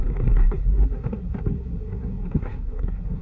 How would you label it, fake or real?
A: fake